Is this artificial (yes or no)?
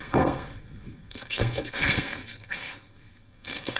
yes